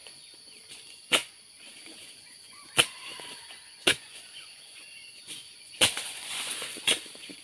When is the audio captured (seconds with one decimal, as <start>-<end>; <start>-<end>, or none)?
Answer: none